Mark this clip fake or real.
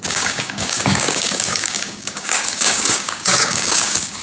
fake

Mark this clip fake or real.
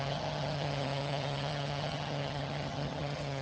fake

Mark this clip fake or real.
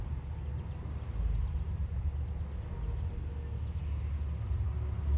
real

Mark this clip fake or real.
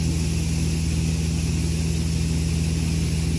real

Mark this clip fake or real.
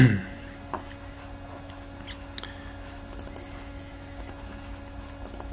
real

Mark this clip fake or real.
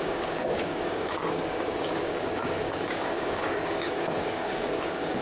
fake